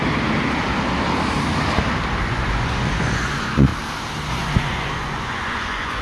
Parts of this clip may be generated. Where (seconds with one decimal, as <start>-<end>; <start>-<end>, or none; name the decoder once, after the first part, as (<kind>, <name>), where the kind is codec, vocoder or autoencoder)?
2.2-3.7 (vocoder, Vocos); 4.3-6.0